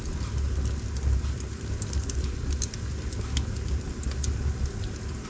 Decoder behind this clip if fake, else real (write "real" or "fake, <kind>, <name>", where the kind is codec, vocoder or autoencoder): real